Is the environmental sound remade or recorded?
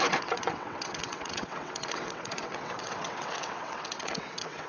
remade